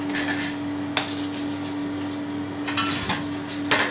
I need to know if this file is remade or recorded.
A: recorded